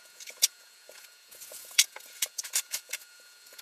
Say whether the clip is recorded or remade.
remade